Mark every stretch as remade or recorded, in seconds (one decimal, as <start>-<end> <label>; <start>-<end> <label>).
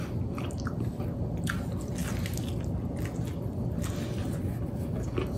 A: 0.0-5.4 recorded